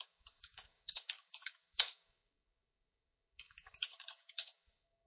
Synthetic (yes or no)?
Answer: yes